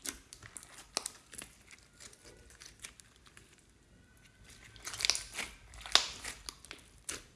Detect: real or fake real